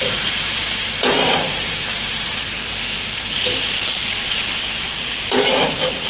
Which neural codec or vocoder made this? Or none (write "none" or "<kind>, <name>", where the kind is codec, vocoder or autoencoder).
vocoder, BigVGAN v2